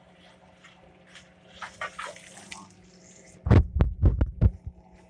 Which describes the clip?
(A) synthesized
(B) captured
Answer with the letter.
B